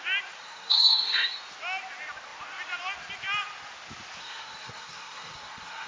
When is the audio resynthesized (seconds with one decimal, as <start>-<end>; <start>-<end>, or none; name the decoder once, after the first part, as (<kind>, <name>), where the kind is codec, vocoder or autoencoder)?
0.4-1.4 (codec, SNAC); 4.2-5.9

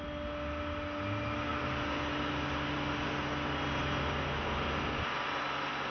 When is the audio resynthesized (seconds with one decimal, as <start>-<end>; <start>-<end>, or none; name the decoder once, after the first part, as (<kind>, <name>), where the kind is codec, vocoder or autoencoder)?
none

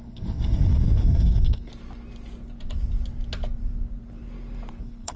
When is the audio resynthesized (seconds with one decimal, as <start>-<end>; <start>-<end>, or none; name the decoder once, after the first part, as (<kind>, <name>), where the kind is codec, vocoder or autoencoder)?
0.0-1.7 (codec, SNAC); 4.8-5.2

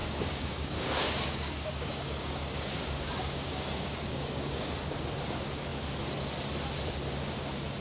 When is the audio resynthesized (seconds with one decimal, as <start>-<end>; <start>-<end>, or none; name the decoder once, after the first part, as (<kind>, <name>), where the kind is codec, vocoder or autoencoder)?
0.0-4.7 (codec, DAC)

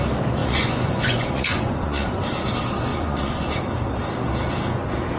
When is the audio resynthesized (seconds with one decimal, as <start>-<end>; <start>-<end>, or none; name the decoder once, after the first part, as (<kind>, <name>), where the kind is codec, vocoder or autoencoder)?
0.4-2.2 (vocoder, Vocos); 2.9-3.6

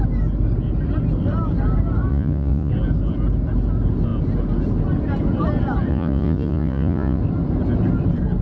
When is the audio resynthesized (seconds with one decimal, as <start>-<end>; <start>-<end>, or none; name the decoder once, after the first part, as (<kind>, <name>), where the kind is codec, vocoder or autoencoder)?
2.1-2.7 (vocoder, Vocos); 5.9-7.2